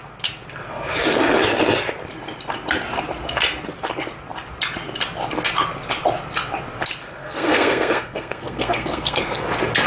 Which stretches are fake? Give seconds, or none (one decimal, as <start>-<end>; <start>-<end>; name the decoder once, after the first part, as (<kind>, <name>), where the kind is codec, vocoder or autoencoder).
7.2-9.4 (codec, SNAC)